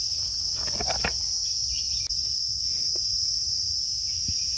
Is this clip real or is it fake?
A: real